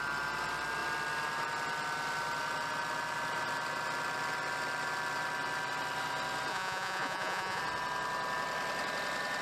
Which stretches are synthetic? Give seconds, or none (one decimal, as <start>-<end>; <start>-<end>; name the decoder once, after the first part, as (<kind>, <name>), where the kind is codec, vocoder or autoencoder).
6.5-7.6 (vocoder, Vocos)